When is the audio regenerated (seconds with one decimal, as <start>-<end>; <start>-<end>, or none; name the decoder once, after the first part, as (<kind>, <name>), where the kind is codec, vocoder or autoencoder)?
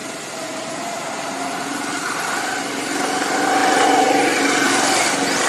none